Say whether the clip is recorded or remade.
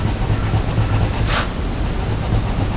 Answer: recorded